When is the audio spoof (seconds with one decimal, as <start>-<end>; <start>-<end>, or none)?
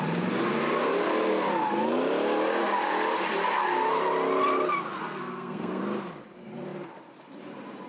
5.0-5.8